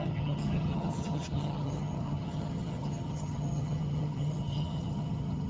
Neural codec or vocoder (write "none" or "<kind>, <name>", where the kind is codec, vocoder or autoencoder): vocoder, HiFi-GAN